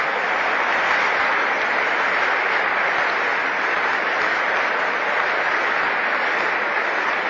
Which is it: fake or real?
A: real